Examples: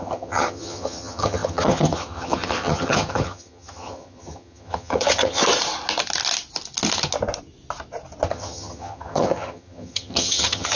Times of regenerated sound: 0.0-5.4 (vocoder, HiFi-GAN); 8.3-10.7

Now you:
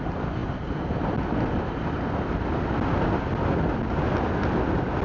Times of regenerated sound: none

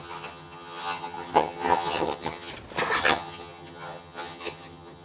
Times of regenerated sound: 0.0-2.5 (vocoder, HiFi-GAN); 3.0-5.0

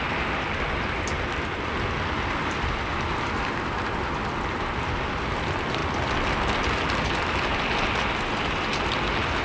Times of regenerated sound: none

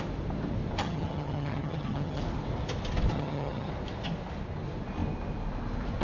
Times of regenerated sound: 0.8-2.2 (vocoder, HiFi-GAN); 3.1-3.7

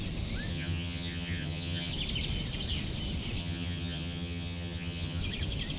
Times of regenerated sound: 0.5-1.9 (vocoder, HiFi-GAN); 3.4-5.2

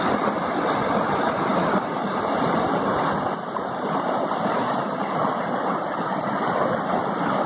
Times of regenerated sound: none